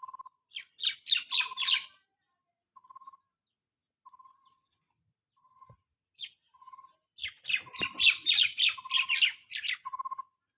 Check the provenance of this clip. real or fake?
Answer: real